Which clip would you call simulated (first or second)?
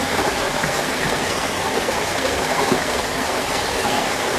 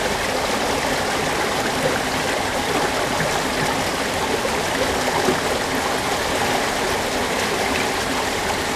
first